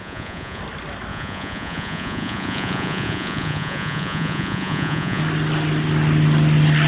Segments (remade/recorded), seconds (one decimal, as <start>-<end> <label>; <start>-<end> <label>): 0.0-0.6 remade; 0.6-1.1 recorded; 1.1-5.2 remade; 5.2-6.9 recorded